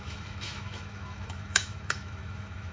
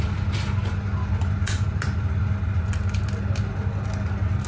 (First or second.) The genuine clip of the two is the second